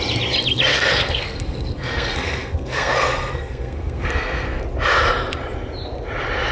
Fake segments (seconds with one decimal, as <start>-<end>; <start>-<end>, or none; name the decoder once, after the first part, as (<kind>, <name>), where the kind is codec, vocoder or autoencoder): 0.7-4.6 (codec, SNAC)